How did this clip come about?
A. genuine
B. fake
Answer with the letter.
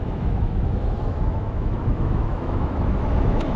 B